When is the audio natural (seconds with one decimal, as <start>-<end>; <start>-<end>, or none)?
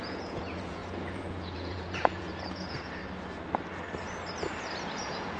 3.0-5.0